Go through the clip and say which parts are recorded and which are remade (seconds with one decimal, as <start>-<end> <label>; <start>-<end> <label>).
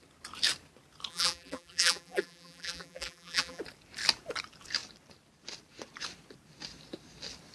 0.0-1.1 recorded; 1.1-3.6 remade; 3.6-7.5 recorded